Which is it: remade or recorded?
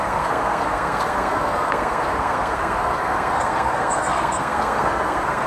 remade